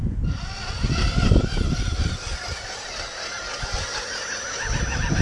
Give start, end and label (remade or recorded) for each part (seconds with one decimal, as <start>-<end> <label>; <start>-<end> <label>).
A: 0.0-1.0 recorded; 1.0-3.1 remade; 3.1-5.2 recorded

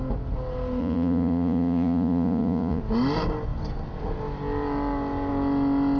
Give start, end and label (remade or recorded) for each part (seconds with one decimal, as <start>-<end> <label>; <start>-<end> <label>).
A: 0.0-0.8 recorded; 0.8-2.8 remade; 2.8-6.0 recorded

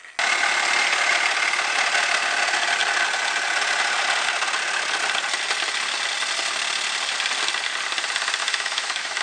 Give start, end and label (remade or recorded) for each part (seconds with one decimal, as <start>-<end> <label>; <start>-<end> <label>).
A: 0.0-8.4 recorded; 8.4-9.2 remade

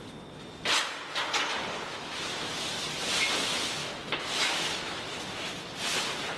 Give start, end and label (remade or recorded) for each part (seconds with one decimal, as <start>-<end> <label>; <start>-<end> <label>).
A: 0.0-1.9 recorded; 1.9-2.5 remade; 2.5-3.8 recorded; 3.8-5.0 remade; 5.0-6.4 recorded

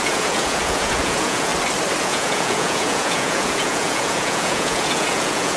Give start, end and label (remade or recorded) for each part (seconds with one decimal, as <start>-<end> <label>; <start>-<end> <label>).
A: 0.0-1.5 remade; 1.5-2.0 recorded; 2.0-5.6 remade